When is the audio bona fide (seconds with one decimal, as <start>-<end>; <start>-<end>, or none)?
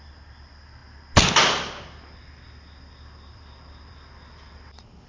0.0-5.1